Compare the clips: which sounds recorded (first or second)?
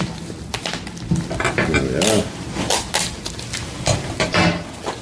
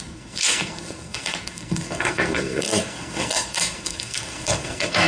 first